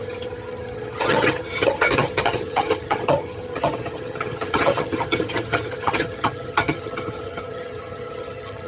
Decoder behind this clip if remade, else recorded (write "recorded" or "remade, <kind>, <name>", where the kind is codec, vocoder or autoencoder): remade, vocoder, HiFi-GAN